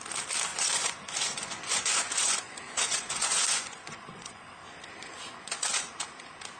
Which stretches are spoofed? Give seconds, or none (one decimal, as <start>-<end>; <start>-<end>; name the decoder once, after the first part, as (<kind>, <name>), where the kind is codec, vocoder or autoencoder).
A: 0.5-4.5 (vocoder, Vocos); 5.0-5.9